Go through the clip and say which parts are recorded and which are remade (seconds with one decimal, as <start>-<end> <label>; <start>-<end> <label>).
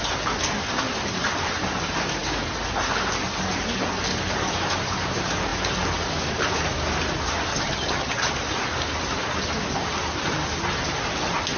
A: 0.0-7.5 recorded; 7.5-8.3 remade; 8.3-11.6 recorded